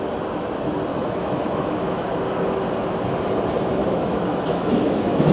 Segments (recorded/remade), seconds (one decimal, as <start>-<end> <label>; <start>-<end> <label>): 0.0-0.9 recorded; 0.9-2.1 remade; 2.1-3.8 recorded; 3.8-5.3 remade